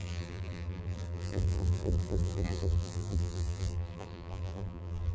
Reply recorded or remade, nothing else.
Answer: remade